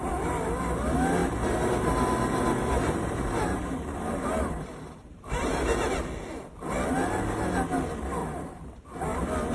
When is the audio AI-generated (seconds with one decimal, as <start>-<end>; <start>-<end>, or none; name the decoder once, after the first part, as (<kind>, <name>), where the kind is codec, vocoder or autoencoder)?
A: 1.2-5.9 (vocoder, BigVGAN v2); 8.2-8.8